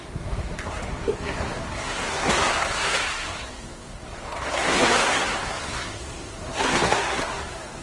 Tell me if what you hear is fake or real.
fake